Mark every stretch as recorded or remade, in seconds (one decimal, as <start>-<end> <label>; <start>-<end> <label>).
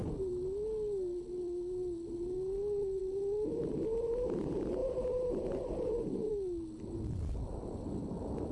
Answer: 0.0-4.8 recorded; 4.8-6.3 remade; 6.3-8.5 recorded